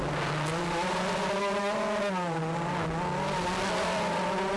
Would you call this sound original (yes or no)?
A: yes